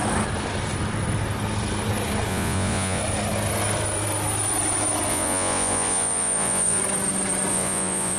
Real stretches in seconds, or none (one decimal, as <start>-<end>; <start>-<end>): 0.0-2.3; 3.0-5.1; 6.8-7.5